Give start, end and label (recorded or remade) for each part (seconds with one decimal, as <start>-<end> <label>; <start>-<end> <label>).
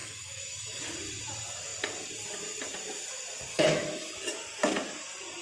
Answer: 0.0-0.8 remade; 0.8-3.5 recorded; 3.5-4.2 remade; 4.2-5.4 recorded